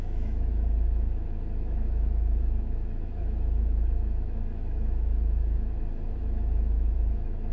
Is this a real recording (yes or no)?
no